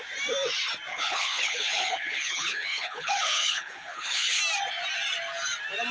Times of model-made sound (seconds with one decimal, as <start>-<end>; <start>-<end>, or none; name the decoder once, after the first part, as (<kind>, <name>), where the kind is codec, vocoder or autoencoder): 0.9-4.4 (codec, HILCodec)